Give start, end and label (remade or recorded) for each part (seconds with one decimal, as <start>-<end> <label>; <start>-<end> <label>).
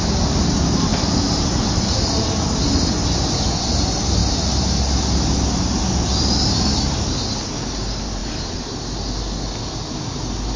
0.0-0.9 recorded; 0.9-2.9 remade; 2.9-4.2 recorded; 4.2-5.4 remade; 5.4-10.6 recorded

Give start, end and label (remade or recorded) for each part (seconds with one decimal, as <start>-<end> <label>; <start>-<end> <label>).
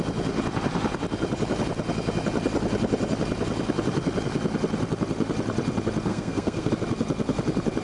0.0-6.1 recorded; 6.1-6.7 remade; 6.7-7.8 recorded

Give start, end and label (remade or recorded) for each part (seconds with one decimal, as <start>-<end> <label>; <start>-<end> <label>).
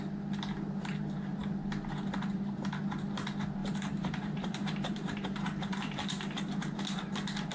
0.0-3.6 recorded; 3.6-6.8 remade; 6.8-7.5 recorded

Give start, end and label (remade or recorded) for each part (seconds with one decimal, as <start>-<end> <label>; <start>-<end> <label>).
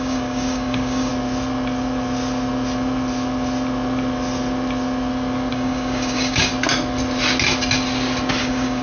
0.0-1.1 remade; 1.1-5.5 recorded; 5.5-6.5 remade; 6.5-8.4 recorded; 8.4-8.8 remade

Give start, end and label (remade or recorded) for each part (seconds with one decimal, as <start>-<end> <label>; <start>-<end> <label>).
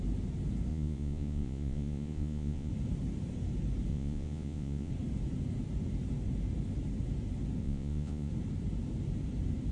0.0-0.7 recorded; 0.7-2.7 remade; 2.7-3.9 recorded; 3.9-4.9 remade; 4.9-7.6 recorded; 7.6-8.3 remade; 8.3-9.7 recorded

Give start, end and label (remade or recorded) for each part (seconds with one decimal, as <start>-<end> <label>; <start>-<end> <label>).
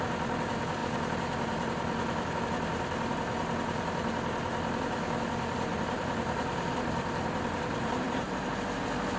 0.0-5.7 recorded; 5.7-8.5 remade; 8.5-9.2 recorded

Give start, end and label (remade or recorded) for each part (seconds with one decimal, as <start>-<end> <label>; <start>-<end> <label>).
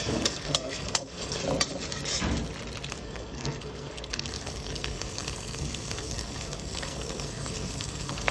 0.0-1.4 remade; 1.4-2.9 recorded; 2.9-8.3 remade